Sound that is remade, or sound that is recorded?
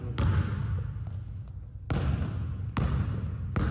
recorded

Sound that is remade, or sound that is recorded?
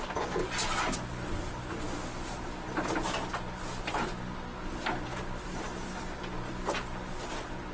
recorded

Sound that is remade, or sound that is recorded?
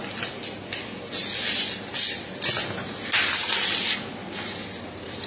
recorded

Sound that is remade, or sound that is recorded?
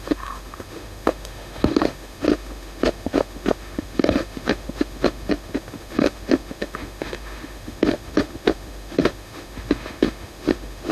remade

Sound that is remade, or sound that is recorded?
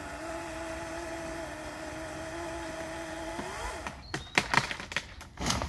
recorded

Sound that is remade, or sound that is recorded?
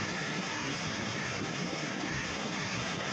remade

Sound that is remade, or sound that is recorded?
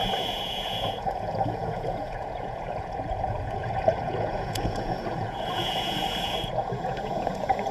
remade